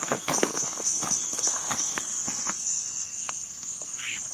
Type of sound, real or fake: fake